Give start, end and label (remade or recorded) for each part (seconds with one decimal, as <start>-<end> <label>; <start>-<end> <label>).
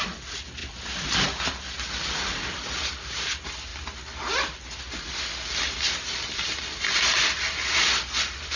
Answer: 0.0-8.6 recorded